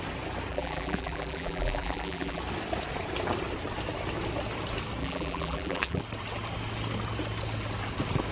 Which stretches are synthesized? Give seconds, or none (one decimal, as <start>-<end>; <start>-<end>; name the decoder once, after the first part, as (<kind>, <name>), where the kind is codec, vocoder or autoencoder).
0.5-2.4 (vocoder, BigVGAN v2); 5.0-6.0